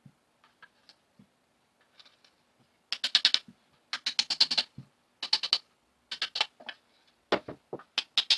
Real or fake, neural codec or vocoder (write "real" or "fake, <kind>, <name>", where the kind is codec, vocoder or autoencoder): real